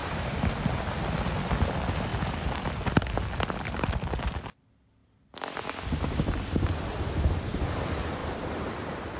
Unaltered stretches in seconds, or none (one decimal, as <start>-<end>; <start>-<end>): 0.5-8.2; 8.7-9.2